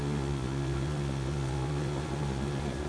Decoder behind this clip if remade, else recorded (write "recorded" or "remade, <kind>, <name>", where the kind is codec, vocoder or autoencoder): remade, vocoder, Vocos